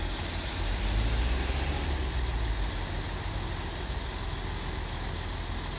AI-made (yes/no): no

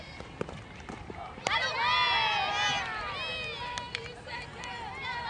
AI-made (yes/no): no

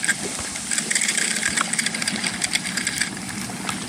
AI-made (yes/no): no